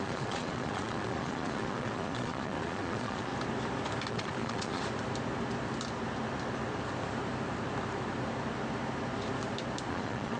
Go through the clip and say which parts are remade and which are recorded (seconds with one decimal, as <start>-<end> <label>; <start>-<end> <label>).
0.0-3.3 remade; 3.3-4.1 recorded; 4.1-4.8 remade; 4.8-9.9 recorded; 9.9-10.4 remade